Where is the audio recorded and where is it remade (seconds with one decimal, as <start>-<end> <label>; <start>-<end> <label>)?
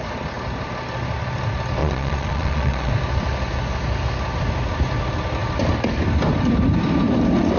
0.0-1.8 recorded; 1.8-2.9 remade; 2.9-7.6 recorded